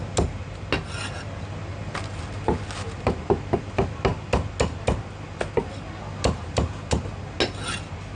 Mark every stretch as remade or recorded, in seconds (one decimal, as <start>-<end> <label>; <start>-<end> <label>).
0.0-8.2 recorded